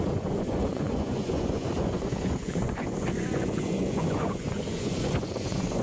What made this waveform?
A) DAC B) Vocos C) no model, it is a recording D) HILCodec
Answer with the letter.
B